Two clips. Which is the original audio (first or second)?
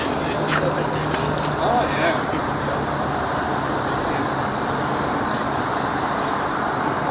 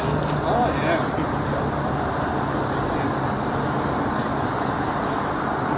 second